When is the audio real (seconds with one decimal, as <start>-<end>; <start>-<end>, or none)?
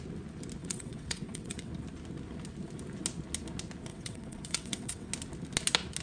0.0-0.6; 1.7-3.9; 5.1-6.0